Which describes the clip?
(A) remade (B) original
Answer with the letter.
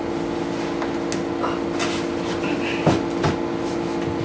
B